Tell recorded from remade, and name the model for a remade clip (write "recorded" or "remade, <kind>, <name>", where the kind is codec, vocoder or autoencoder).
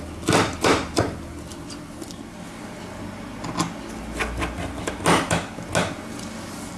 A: recorded